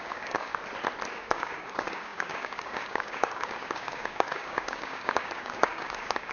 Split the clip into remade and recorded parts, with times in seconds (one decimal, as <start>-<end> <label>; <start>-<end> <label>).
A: 0.0-0.5 remade; 0.5-1.1 recorded; 1.1-6.3 remade